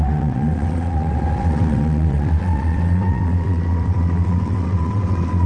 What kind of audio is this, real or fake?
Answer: fake